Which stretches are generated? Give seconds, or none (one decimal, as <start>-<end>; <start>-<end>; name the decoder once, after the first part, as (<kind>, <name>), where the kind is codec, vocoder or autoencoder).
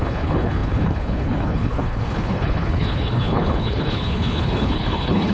0.0-5.3 (codec, HILCodec)